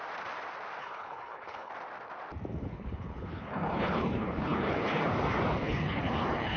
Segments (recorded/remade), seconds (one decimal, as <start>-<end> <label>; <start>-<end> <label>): 0.0-0.8 recorded; 0.8-1.7 remade; 1.7-2.6 recorded; 2.6-5.1 remade; 5.1-5.6 recorded; 5.6-6.6 remade